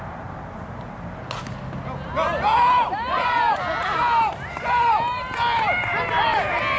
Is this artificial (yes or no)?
no